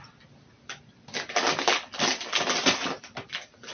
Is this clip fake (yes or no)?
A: no